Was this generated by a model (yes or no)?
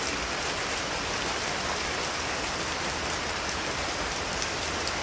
no